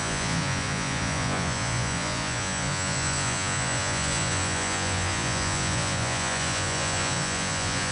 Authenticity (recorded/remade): remade